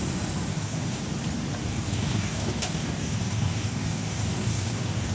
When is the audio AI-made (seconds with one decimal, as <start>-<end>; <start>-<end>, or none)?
0.5-1.0; 1.7-5.1